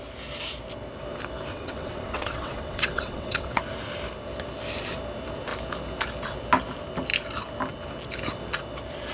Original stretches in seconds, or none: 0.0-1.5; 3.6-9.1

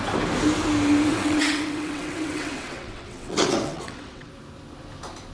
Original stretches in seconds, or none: 0.0-1.1; 4.3-5.3

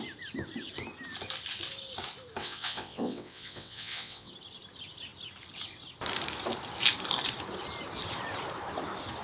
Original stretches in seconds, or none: 0.0-2.4; 4.3-9.2

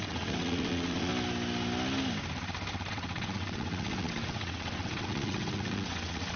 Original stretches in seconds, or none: 1.1-2.9

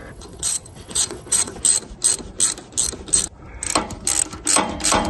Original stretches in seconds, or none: 1.6-5.1

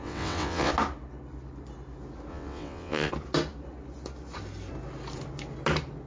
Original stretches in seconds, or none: 0.7-2.3; 3.1-6.1

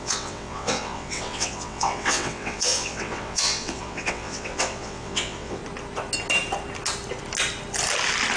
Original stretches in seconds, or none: 5.6-8.4

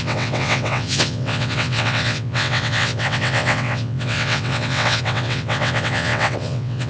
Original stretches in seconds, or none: none